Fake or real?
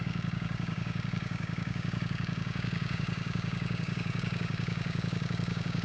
fake